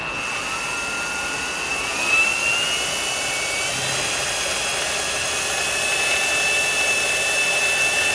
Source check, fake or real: real